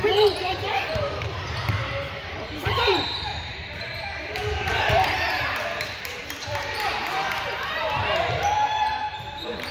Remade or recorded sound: remade